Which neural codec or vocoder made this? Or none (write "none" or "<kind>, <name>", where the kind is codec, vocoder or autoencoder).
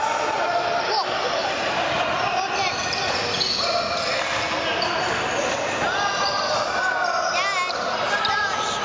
none